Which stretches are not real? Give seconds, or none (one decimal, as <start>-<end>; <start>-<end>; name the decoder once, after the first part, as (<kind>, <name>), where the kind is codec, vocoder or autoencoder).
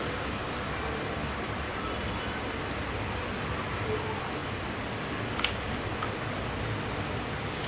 none